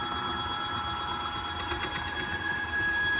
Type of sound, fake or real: real